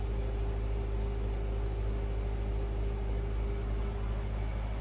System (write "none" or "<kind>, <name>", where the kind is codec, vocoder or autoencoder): none